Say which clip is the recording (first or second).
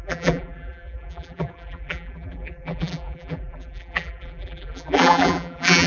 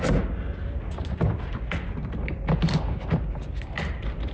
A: second